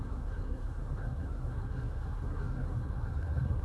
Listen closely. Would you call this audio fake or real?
fake